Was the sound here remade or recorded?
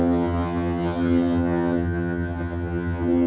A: remade